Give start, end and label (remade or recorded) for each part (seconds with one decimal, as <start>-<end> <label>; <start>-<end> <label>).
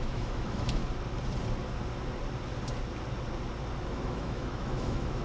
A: 0.0-0.8 remade; 0.8-3.9 recorded; 3.9-5.2 remade